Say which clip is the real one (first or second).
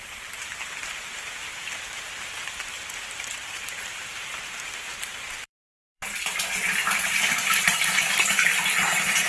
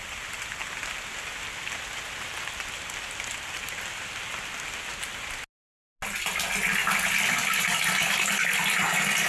second